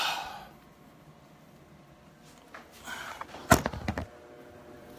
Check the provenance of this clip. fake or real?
real